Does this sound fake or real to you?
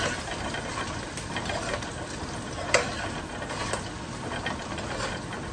real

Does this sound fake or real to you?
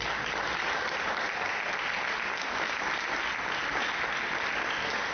real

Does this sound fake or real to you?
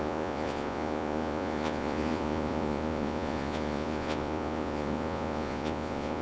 fake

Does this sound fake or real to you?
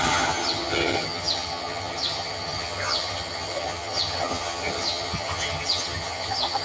fake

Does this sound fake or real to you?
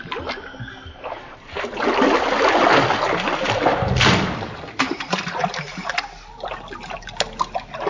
real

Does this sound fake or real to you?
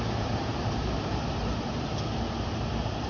fake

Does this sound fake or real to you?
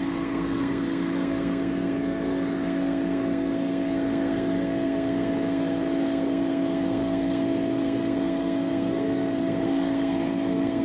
fake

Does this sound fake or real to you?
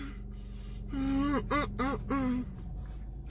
real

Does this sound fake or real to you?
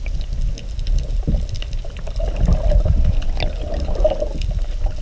real